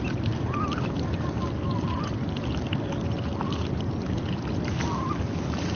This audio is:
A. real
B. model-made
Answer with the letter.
A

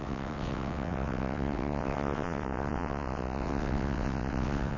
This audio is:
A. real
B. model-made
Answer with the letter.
B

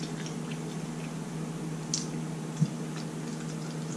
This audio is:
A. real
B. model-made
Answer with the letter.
A